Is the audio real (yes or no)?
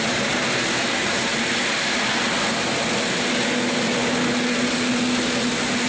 yes